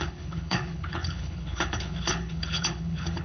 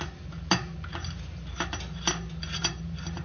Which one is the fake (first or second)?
first